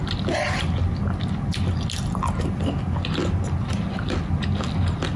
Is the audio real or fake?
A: real